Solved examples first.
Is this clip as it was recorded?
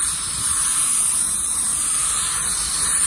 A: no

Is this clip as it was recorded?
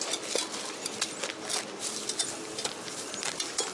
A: yes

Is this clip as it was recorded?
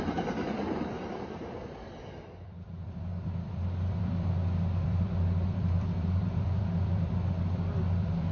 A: no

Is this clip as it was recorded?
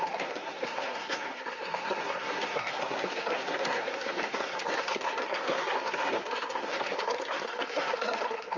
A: no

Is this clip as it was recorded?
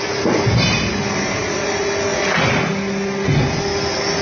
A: yes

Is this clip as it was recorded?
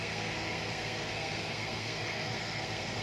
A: no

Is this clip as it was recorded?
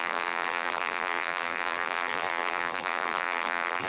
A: no